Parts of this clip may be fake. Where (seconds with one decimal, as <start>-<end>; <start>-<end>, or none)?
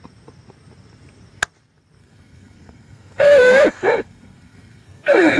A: 2.0-5.4